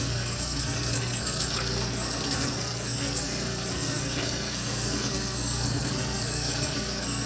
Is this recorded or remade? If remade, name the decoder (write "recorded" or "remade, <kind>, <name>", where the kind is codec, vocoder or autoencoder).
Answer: remade, codec, SNAC